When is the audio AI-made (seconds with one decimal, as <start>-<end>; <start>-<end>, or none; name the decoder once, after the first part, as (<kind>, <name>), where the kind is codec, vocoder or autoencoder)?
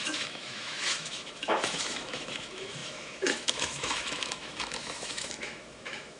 0.0-6.2 (autoencoder, DAC-VAE)